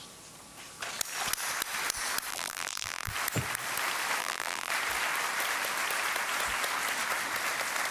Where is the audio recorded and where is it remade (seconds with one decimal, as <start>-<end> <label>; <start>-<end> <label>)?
0.0-2.3 recorded; 2.3-3.1 remade; 3.1-4.2 recorded; 4.2-4.7 remade; 4.7-7.9 recorded